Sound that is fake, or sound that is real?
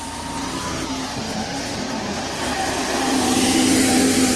real